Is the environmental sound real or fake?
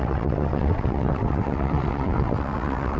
fake